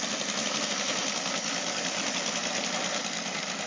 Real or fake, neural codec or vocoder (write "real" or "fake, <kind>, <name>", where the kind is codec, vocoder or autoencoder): real